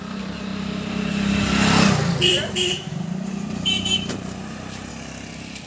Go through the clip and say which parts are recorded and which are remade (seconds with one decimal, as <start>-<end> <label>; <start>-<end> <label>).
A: 0.0-2.3 recorded; 2.3-4.9 remade; 4.9-5.7 recorded